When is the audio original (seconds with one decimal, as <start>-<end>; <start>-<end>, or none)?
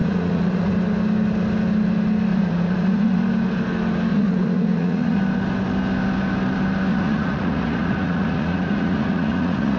0.7-2.3; 3.2-4.1; 5.2-6.9